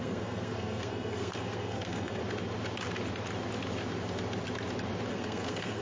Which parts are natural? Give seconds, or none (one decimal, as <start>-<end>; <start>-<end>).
2.2-5.1